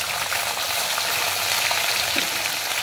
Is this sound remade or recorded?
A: recorded